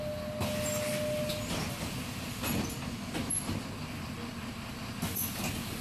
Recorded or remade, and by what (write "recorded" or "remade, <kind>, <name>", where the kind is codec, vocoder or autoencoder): recorded